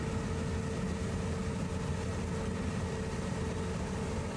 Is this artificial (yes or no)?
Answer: no